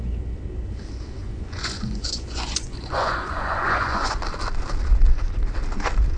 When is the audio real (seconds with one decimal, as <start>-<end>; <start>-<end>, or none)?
0.0-1.2; 4.2-6.2